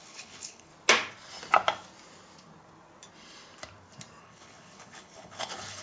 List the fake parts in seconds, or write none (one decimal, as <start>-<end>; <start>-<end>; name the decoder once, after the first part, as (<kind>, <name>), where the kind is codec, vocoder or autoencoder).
0.0-0.7 (codec, HILCodec); 4.2-5.8